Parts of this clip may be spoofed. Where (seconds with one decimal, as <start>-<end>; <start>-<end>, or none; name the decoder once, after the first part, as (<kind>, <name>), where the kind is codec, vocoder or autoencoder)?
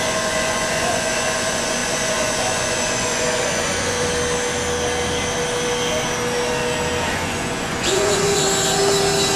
0.0-4.1 (vocoder, Vocos); 7.1-8.4